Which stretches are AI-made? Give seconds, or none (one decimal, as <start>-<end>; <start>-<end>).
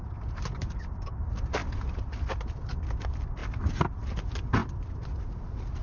none